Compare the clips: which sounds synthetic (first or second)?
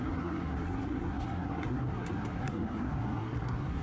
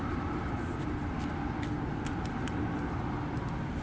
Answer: first